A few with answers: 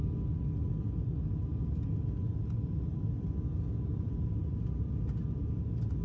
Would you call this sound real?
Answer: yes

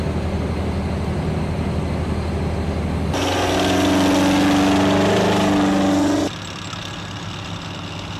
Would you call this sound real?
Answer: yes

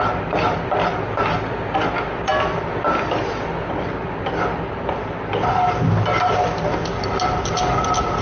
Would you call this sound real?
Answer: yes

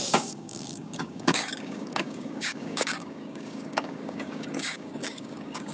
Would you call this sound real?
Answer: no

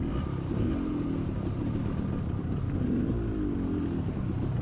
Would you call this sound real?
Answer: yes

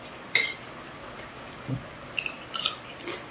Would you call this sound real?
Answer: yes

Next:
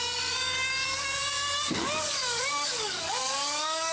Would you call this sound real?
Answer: no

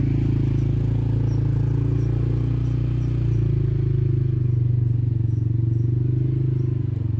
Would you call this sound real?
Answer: yes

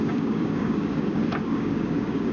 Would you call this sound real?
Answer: no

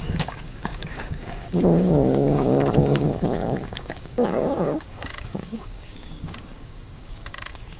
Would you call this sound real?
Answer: no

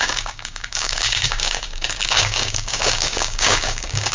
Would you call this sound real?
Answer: no